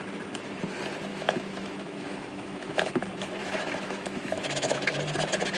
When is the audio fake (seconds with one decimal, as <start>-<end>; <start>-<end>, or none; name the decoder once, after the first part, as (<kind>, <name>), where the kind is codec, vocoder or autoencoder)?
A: 1.1-2.9 (autoencoder, DAC-VAE); 3.4-4.9